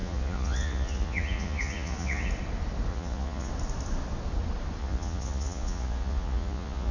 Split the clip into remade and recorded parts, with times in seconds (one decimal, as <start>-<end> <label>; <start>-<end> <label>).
0.0-2.3 remade; 2.3-2.9 recorded; 2.9-3.5 remade; 3.5-4.8 recorded; 4.8-6.9 remade